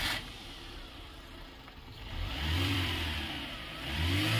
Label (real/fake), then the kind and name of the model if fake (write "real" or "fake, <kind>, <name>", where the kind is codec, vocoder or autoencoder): fake, vocoder, BigVGAN v2